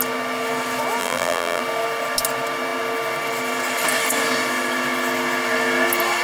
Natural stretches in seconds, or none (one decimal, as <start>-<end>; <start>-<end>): 0.0-1.0; 1.6-6.2